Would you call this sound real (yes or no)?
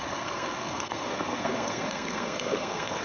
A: no